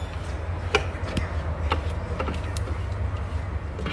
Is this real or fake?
real